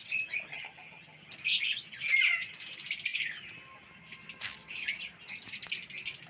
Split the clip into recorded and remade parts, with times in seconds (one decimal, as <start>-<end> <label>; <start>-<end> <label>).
0.0-0.5 recorded; 0.5-1.3 remade; 1.3-6.3 recorded

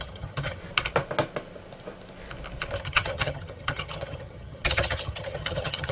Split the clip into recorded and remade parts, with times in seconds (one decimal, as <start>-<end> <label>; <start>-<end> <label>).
0.0-0.6 remade; 0.6-2.8 recorded; 2.8-5.9 remade

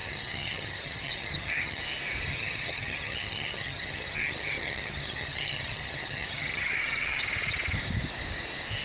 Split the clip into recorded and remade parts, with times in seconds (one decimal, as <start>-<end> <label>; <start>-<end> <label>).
0.0-1.8 remade; 1.8-2.3 recorded; 2.3-7.2 remade; 7.2-8.8 recorded

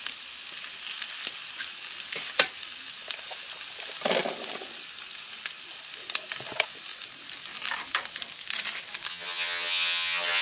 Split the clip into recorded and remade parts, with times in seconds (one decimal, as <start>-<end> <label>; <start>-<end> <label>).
0.0-9.1 recorded; 9.1-10.4 remade